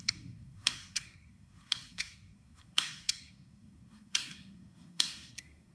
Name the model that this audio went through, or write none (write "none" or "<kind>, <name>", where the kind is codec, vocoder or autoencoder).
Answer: codec, SNAC